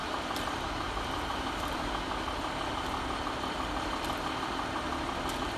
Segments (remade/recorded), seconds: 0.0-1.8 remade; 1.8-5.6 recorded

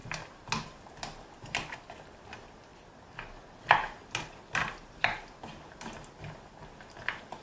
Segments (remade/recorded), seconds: 0.0-7.4 recorded

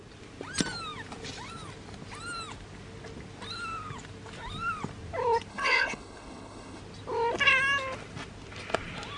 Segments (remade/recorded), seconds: 0.0-5.5 recorded; 5.5-6.8 remade; 6.8-9.2 recorded

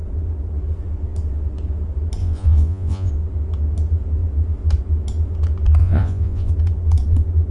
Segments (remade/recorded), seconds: 0.0-2.2 recorded; 2.2-3.1 remade; 3.1-5.8 recorded; 5.8-6.5 remade; 6.5-7.5 recorded

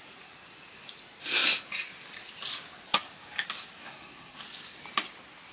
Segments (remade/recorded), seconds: 0.0-3.8 recorded; 3.8-4.4 remade; 4.4-5.5 recorded

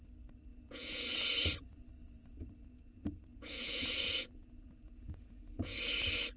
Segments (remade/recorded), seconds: 0.0-0.5 recorded; 0.5-1.2 remade; 1.2-2.0 recorded; 2.0-5.8 remade; 5.8-6.4 recorded